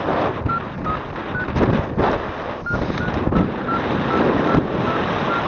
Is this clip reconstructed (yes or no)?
no